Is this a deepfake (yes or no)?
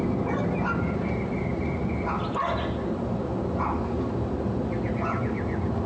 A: no